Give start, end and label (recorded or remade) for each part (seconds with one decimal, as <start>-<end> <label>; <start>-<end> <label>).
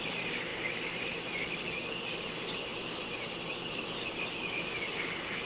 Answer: 0.0-5.5 recorded